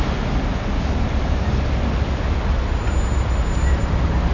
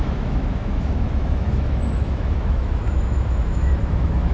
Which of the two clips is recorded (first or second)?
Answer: first